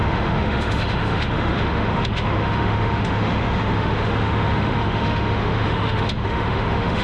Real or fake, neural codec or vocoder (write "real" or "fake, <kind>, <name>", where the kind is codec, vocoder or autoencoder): fake, autoencoder, DAC-VAE